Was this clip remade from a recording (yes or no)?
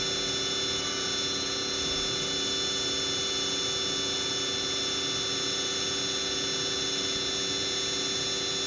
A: no